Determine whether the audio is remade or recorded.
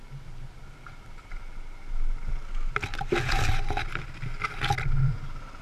recorded